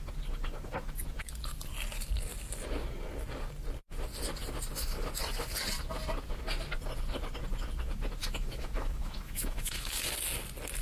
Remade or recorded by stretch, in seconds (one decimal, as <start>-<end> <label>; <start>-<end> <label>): 0.0-8.2 recorded; 8.2-10.0 remade; 10.0-10.8 recorded